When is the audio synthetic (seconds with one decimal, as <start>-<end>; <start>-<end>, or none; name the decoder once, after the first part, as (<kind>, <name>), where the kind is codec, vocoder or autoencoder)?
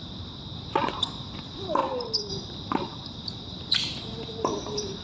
1.0-1.8 (vocoder, BigVGAN v2); 2.3-5.0